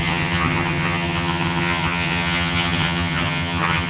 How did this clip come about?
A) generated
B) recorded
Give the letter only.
A